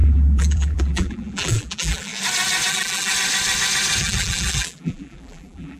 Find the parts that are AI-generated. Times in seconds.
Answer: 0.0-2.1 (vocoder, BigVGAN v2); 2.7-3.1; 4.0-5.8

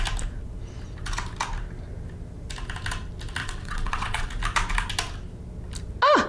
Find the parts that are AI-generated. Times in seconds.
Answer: 3.4-4.3 (vocoder, WaveNeXt)

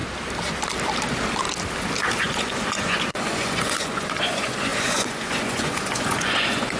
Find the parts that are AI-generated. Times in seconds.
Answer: 2.2-6.8 (vocoder, Vocos)

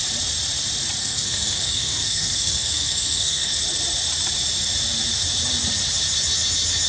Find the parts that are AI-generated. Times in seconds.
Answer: 1.0-3.5 (codec, SNAC)

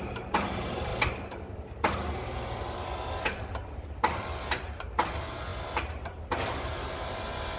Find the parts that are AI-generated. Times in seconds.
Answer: 0.0-0.9 (vocoder, BigVGAN v2); 2.1-7.6

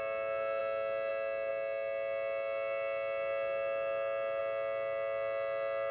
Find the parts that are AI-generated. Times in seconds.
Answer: none